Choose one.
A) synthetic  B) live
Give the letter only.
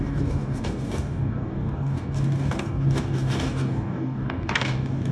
A